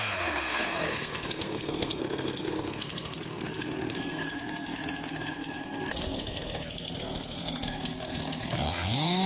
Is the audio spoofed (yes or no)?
yes